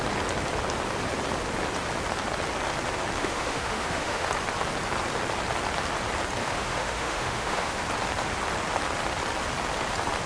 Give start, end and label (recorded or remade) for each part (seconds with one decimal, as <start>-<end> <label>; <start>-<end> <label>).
0.0-3.2 recorded; 3.2-4.3 remade; 4.3-6.4 recorded; 6.4-7.8 remade; 7.8-10.3 recorded